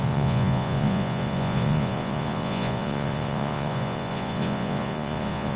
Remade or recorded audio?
remade